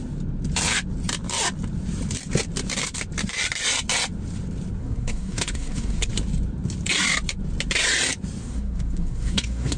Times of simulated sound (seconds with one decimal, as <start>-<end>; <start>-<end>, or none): 4.8-6.1; 8.4-9.8